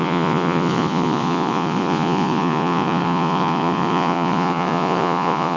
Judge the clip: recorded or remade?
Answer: remade